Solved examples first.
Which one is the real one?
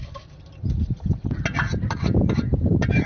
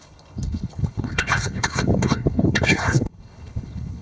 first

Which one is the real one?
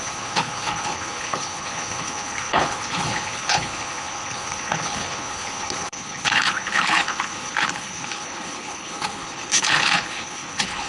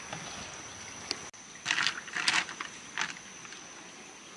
second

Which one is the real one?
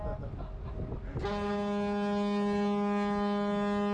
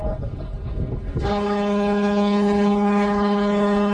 first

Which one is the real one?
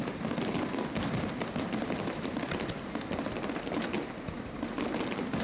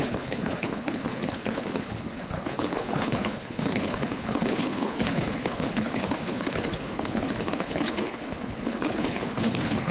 first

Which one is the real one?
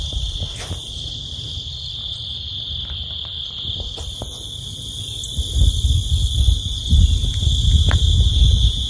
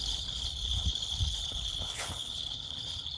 first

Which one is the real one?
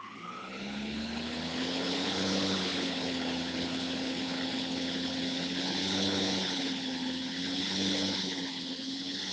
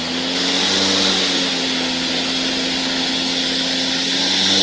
second